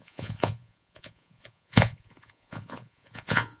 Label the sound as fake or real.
fake